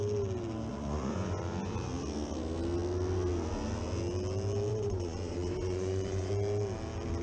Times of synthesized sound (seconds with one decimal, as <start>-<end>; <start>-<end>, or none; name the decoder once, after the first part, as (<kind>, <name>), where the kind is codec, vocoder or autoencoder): 0.7-1.4 (vocoder, Vocos); 4.7-6.3